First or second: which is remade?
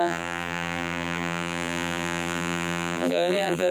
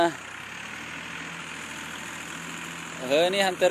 first